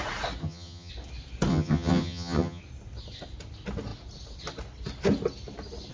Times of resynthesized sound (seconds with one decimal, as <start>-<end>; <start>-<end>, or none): 0.4-0.9; 1.5-2.6